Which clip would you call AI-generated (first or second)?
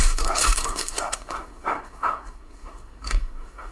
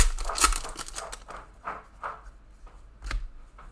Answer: first